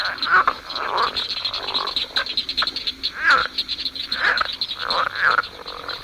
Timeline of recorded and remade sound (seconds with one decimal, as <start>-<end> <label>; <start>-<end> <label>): 0.0-3.4 recorded; 3.4-4.6 remade; 4.6-6.0 recorded